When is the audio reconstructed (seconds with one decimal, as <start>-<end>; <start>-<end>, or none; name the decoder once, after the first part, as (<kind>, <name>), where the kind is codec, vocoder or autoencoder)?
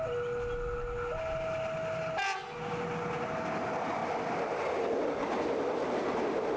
none